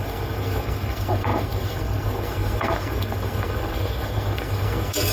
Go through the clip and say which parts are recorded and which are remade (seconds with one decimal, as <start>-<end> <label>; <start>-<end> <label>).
0.0-5.1 remade